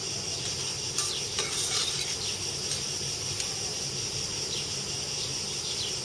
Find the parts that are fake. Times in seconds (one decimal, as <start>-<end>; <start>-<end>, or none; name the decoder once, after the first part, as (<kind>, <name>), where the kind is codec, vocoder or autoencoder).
0.0-0.6 (vocoder, BigVGAN v2); 1.9-4.3; 4.9-6.0